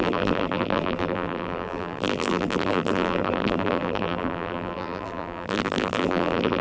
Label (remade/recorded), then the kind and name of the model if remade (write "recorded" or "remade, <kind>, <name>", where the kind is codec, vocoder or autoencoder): remade, vocoder, BigVGAN v2